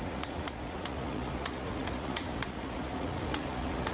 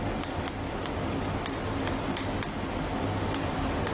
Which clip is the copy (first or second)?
first